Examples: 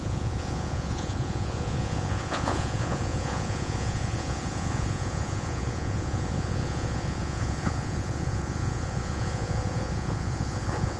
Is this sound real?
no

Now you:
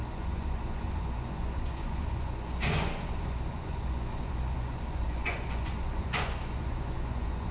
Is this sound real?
no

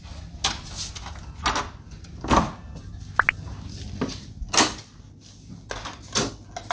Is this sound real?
yes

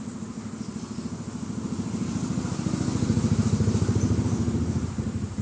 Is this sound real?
yes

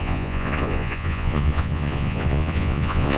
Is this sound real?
no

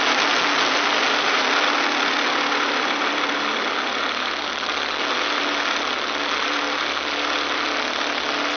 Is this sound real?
yes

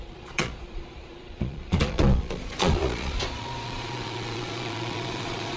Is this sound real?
no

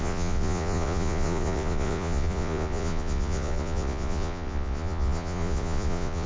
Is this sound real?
no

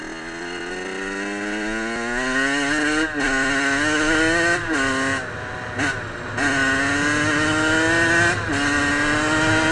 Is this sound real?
yes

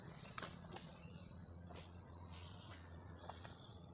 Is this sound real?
no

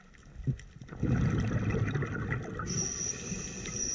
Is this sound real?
yes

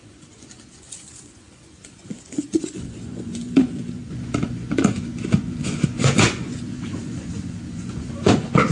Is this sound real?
no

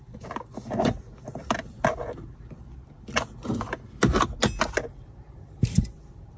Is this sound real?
yes